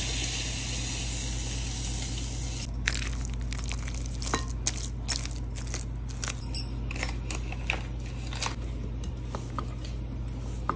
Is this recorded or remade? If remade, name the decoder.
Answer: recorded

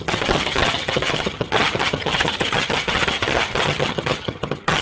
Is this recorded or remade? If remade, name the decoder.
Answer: remade, vocoder, HiFi-GAN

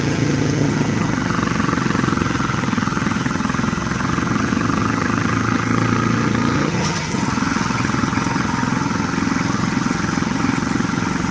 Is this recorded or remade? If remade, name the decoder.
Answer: remade, vocoder, HiFi-GAN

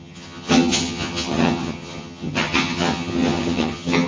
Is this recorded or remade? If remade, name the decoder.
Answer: remade, vocoder, HiFi-GAN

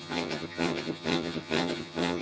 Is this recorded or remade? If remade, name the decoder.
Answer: remade, vocoder, HiFi-GAN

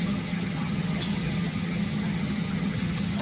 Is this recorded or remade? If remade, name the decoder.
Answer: remade, vocoder, HiFi-GAN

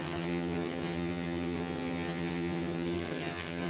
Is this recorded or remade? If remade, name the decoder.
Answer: remade, vocoder, HiFi-GAN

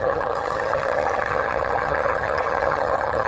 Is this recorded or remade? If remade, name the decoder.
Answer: remade, vocoder, HiFi-GAN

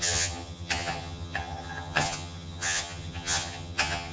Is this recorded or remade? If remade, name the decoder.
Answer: remade, vocoder, HiFi-GAN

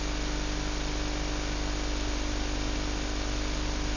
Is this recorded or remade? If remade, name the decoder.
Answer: recorded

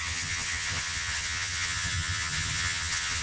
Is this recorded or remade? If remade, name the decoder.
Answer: remade, vocoder, HiFi-GAN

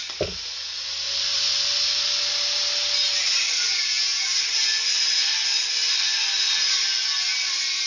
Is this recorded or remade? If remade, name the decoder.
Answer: recorded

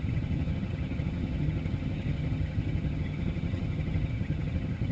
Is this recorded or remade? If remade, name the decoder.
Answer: remade, vocoder, HiFi-GAN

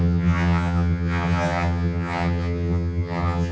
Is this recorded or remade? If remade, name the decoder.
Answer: remade, vocoder, HiFi-GAN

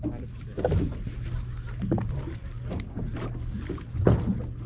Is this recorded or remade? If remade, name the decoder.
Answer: recorded